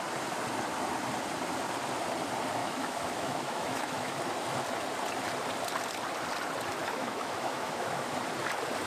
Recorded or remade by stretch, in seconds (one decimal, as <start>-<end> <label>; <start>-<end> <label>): 0.0-2.6 recorded; 2.6-4.1 remade; 4.1-6.8 recorded; 6.8-8.1 remade; 8.1-8.9 recorded